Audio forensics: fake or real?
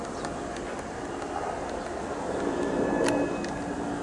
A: real